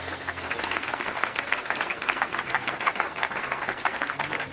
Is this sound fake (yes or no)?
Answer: yes